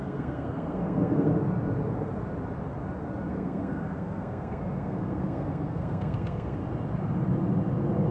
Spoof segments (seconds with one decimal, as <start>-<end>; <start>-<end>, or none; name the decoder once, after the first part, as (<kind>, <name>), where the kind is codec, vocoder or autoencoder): 0.0-1.3 (codec, SNAC); 3.3-6.6